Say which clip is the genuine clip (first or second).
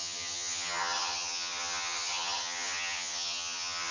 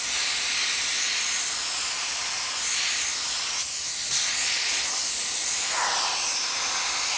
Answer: second